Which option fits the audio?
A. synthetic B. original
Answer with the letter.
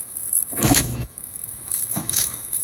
A